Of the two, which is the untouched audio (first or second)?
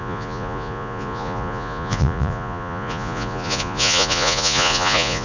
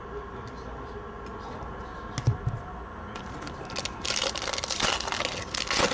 second